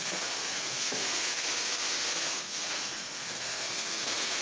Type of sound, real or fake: fake